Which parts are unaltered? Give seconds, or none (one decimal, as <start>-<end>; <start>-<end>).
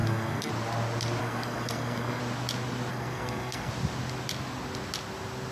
0.5-1.2; 2.2-2.9; 3.7-5.5